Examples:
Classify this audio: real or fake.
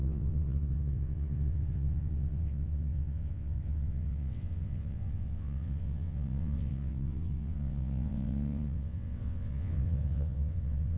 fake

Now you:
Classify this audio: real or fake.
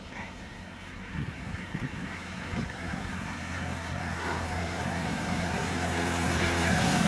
fake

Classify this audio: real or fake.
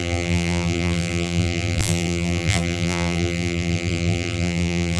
fake